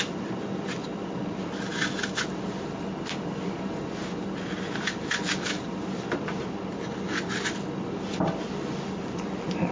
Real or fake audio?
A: real